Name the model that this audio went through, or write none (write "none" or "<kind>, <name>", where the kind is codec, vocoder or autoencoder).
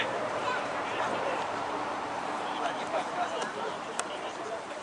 vocoder, BigVGAN v2